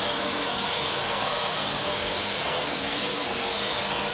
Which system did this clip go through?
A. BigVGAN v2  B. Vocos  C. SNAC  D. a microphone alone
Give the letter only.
C